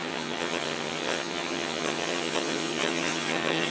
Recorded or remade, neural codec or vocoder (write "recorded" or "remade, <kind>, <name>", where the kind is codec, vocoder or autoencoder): remade, vocoder, HiFi-GAN